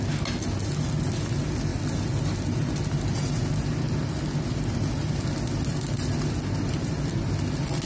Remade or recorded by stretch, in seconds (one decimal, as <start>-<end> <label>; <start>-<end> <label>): 0.0-7.9 recorded